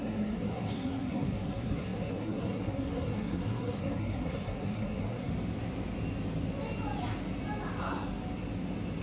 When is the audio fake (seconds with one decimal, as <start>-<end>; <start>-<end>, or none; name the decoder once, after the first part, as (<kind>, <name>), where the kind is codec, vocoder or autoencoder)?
0.0-5.3 (codec, SNAC); 7.8-8.2